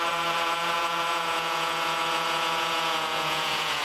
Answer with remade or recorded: remade